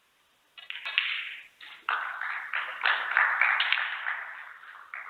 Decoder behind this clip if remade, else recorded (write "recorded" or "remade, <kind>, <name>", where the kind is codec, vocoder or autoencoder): recorded